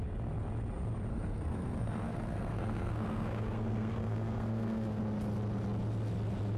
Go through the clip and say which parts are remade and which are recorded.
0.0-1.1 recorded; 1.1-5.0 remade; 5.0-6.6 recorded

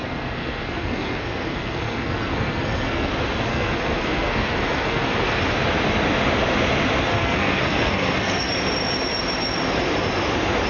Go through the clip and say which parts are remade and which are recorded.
0.0-3.1 remade; 3.1-3.5 recorded; 3.5-5.4 remade; 5.4-7.1 recorded; 7.1-8.5 remade; 8.5-10.7 recorded

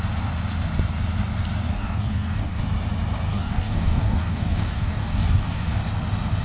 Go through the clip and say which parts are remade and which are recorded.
0.0-1.7 recorded; 1.7-2.6 remade; 2.6-3.3 recorded; 3.3-5.8 remade; 5.8-6.4 recorded

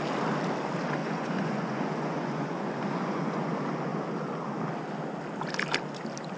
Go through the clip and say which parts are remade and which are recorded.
0.0-1.0 recorded; 1.0-3.5 remade; 3.5-6.4 recorded

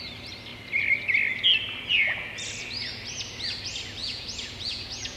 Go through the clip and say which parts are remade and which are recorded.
0.0-4.0 recorded; 4.0-5.2 remade

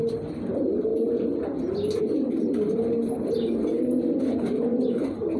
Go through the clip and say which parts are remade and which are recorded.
0.0-5.4 recorded

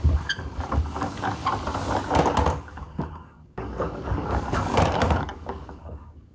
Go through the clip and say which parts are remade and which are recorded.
0.0-1.4 remade; 1.4-2.5 recorded; 2.5-6.3 remade